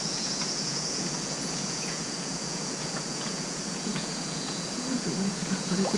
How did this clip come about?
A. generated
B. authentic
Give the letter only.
A